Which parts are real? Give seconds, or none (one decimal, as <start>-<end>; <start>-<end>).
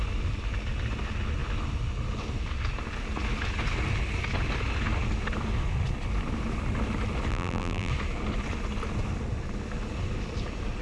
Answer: 0.0-7.3; 7.9-10.8